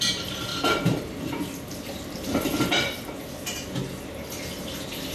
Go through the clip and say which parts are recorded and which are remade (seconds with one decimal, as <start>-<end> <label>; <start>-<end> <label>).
0.0-0.5 recorded; 0.5-1.2 remade; 1.2-5.1 recorded